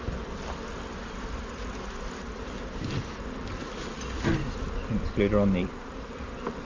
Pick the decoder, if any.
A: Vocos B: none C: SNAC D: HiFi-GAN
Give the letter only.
B